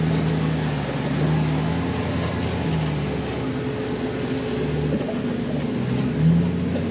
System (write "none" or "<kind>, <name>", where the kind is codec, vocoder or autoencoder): none